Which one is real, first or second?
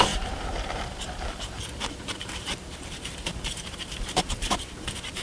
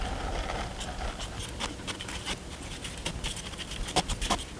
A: second